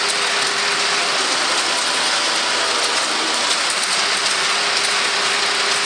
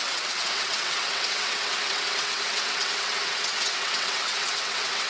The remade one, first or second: second